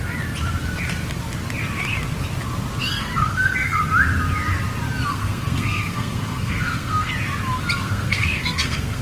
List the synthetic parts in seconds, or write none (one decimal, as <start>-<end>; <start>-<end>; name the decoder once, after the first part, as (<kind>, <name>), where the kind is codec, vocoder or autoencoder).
2.8-3.8 (codec, SNAC); 5.1-7.1; 7.8-9.0